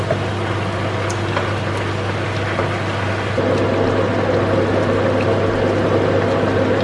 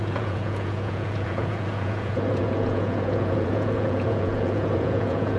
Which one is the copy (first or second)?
second